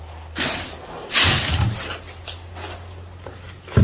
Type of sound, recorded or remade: recorded